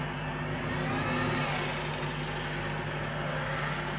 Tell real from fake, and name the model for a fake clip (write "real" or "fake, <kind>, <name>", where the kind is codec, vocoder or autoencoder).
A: real